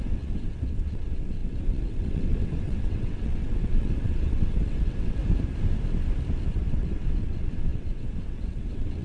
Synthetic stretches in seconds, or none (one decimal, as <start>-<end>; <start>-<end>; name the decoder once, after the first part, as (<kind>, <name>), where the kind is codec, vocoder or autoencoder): 0.0-5.2 (vocoder, WaveNeXt); 6.7-9.0